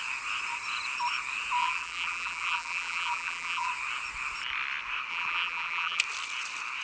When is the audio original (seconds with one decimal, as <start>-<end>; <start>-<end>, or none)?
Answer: 0.0-1.6; 3.7-5.1; 6.0-6.8